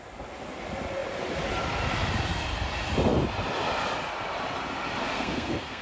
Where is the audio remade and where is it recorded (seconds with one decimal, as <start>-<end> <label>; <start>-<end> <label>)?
0.0-5.0 recorded; 5.0-5.8 remade